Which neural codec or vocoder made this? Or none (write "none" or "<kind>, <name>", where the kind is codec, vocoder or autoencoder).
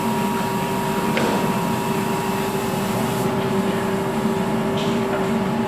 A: vocoder, BigVGAN v2